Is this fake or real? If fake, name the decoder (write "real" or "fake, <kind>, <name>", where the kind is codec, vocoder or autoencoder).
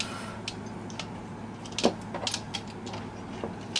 real